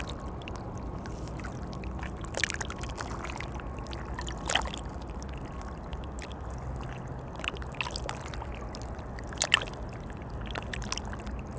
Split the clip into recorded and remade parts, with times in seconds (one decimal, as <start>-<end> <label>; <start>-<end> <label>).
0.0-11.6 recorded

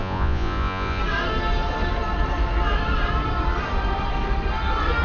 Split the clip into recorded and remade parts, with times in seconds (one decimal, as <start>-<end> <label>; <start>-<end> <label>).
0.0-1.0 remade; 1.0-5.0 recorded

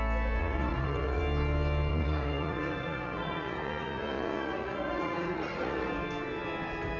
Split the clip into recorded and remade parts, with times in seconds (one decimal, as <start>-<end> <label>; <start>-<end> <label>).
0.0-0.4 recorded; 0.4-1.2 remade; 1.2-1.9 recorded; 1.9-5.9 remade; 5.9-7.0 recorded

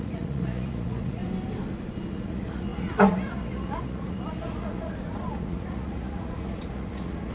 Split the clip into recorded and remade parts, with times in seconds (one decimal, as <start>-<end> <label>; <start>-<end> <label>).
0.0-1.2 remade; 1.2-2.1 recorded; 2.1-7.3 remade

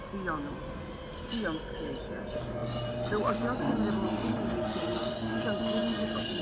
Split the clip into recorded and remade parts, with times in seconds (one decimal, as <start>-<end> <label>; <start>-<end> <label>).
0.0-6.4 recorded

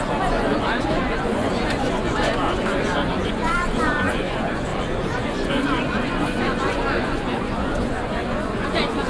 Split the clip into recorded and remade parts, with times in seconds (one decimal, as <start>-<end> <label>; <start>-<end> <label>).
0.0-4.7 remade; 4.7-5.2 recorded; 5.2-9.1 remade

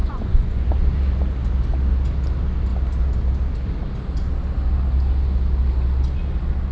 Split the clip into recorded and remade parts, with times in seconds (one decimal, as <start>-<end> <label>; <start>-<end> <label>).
0.0-0.7 remade; 0.7-6.7 recorded